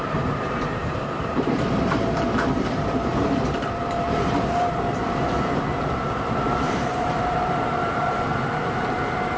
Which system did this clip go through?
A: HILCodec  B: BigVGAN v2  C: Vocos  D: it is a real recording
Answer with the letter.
B